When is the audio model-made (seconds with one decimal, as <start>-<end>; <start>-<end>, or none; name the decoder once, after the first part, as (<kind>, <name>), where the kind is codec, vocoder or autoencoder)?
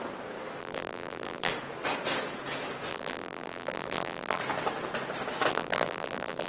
0.6-1.5 (vocoder, BigVGAN v2); 2.9-4.4; 5.5-6.5